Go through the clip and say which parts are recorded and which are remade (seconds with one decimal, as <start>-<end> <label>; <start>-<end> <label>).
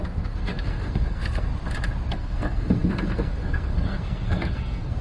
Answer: 0.0-1.5 remade; 1.5-2.1 recorded; 2.1-5.0 remade